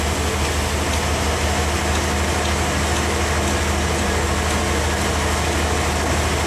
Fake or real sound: real